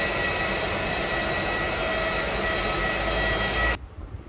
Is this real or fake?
real